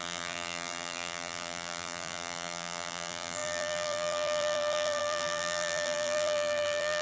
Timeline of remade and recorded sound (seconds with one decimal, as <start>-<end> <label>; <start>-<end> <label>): 0.0-7.0 remade